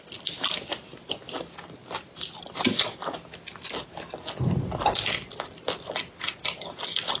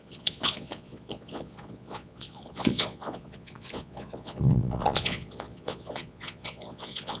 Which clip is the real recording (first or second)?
first